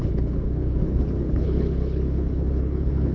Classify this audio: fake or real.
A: fake